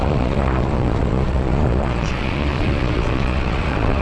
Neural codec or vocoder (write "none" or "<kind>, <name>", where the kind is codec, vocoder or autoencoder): vocoder, Vocos